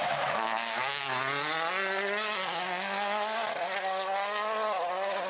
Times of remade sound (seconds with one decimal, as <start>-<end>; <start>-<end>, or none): 0.0-1.0